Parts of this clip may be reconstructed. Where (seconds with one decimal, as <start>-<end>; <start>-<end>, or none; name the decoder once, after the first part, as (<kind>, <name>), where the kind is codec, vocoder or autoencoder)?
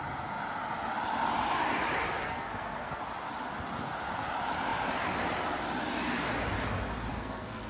2.2-3.0 (codec, SNAC); 7.1-7.7